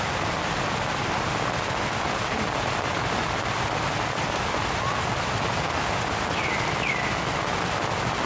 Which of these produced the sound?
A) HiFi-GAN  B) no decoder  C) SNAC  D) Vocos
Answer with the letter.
B